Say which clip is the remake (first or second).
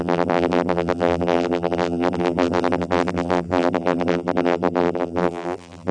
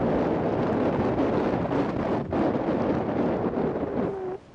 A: first